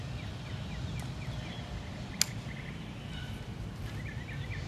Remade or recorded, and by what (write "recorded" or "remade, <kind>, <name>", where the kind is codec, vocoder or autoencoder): recorded